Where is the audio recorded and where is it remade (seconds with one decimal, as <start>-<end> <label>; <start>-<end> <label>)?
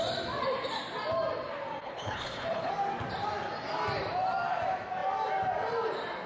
0.0-1.8 recorded; 1.8-2.7 remade; 2.7-6.3 recorded